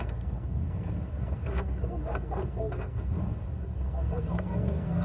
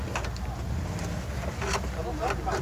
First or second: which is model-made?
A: first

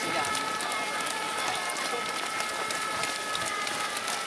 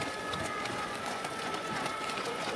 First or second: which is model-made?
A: second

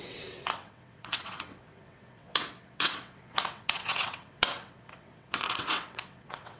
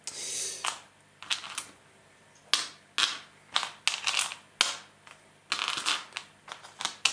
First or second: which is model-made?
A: first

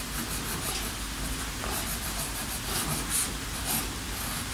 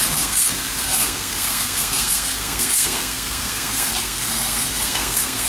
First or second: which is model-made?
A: second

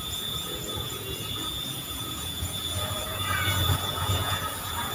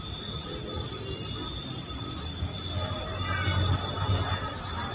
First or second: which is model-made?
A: first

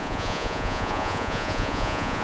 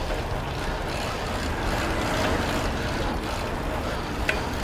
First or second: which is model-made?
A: first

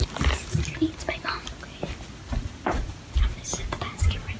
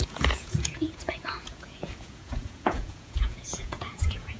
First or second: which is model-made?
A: second